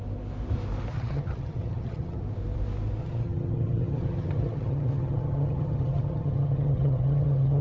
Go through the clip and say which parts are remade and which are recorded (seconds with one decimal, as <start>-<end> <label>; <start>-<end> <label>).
0.0-0.9 recorded; 0.9-2.2 remade; 2.2-3.0 recorded; 3.0-7.6 remade

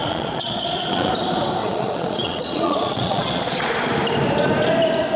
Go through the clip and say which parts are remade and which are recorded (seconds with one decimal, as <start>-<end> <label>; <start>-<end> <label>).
0.0-1.1 remade; 1.1-1.6 recorded; 1.6-3.7 remade; 3.7-5.2 recorded

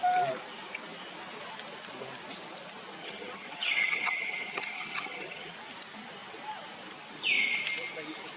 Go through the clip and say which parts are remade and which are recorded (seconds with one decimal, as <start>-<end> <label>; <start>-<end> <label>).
0.0-3.0 recorded; 3.0-5.5 remade; 5.5-8.4 recorded

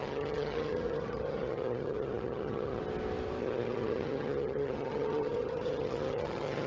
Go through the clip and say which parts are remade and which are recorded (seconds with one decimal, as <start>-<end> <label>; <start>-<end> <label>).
0.0-2.8 remade; 2.8-3.4 recorded; 3.4-6.7 remade